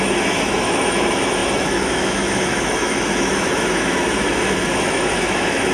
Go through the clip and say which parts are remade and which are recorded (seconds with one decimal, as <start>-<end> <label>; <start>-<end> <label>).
0.0-5.7 remade